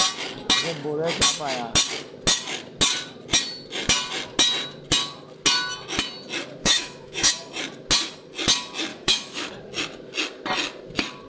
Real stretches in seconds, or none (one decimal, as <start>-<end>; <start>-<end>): 0.0-6.6; 7.3-8.9; 9.5-11.3